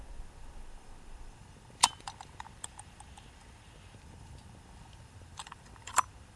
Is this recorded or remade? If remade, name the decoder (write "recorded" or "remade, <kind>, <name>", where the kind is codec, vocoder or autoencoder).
remade, vocoder, BigVGAN v2